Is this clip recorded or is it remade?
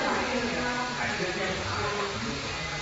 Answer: recorded